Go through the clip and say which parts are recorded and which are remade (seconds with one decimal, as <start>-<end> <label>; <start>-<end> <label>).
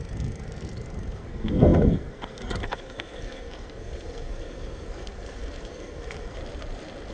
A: 0.0-6.4 remade; 6.4-7.1 recorded